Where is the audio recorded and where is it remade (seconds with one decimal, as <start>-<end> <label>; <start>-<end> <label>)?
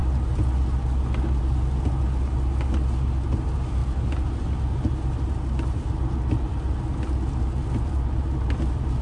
0.0-9.0 recorded